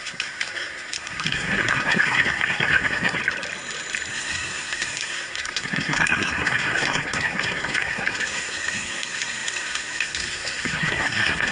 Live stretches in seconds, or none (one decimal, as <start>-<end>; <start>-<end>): 3.2-4.1